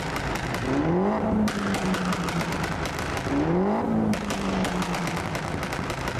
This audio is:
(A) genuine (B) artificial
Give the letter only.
A